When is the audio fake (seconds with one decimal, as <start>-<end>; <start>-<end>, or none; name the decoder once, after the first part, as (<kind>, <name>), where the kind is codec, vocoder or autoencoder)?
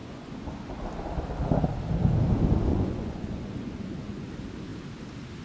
0.0-0.6 (vocoder, Vocos); 2.7-4.3